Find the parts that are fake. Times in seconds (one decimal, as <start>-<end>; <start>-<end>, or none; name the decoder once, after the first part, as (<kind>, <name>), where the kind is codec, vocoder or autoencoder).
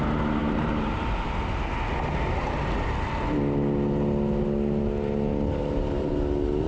0.4-1.1 (vocoder, BigVGAN v2); 5.6-6.1